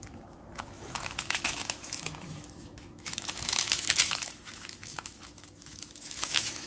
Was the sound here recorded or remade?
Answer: remade